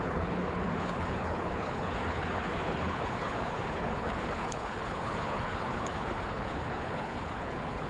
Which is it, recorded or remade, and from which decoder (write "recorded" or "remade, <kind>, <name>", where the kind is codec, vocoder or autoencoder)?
remade, codec, HILCodec